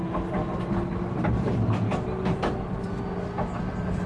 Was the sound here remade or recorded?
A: recorded